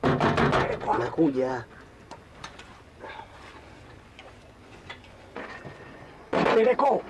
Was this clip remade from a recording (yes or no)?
yes